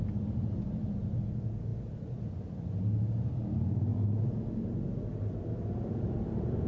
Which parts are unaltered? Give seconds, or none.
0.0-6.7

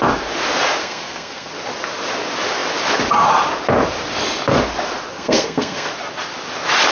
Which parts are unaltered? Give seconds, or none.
0.0-0.8; 1.5-5.1; 5.9-6.9

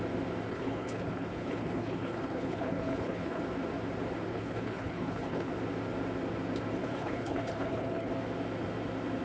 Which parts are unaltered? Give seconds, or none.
0.0-0.5; 3.4-4.3; 5.5-6.8; 8.1-9.2

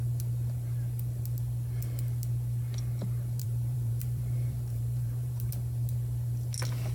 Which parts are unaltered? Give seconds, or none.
0.0-3.4; 5.5-6.9